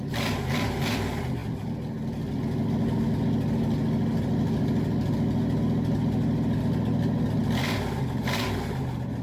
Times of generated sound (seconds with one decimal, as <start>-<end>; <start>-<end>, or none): none